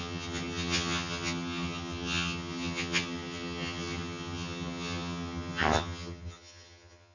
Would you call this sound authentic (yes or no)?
no